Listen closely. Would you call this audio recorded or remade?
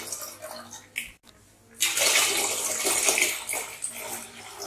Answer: recorded